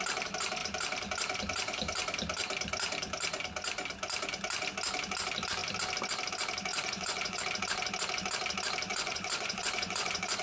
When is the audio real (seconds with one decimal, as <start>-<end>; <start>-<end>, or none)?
0.0-6.7; 7.4-8.9